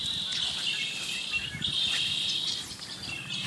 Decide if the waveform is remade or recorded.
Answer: recorded